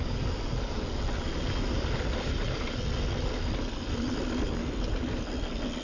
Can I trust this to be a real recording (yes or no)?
yes